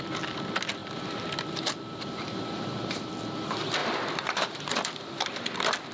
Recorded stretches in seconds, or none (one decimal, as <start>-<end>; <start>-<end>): 0.0-0.8; 3.1-3.8; 4.7-5.9